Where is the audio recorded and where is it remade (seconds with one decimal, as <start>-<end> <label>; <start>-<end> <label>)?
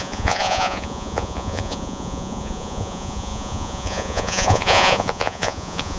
0.0-6.0 remade